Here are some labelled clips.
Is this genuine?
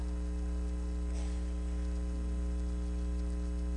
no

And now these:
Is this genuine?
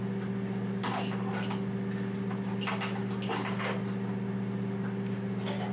yes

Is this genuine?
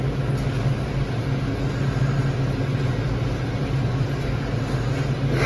yes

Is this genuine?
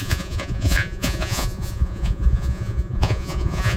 no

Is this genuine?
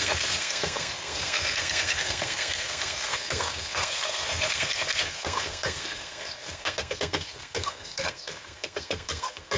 no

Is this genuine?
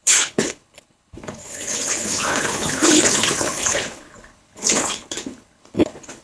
no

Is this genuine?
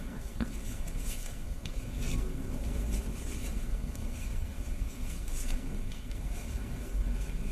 no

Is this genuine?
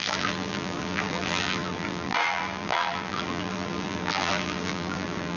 no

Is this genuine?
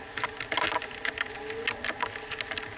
yes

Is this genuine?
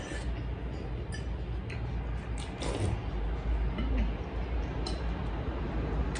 yes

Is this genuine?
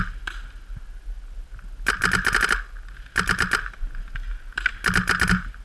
yes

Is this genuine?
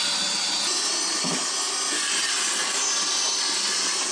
yes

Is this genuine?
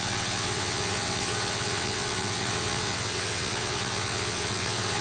no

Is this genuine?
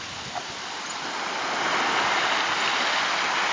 yes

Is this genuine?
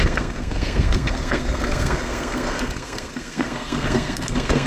no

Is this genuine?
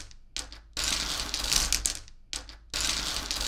yes